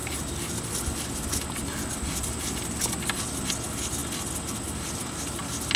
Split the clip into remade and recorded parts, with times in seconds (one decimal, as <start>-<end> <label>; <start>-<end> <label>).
0.0-5.8 recorded